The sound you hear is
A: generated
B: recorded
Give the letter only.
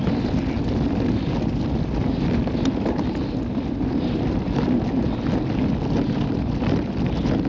B